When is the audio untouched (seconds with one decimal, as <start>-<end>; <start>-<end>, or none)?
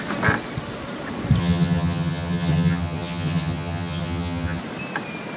0.0-1.4; 4.6-5.4